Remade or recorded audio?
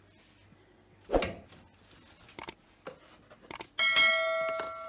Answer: recorded